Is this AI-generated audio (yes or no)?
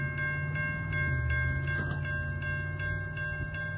no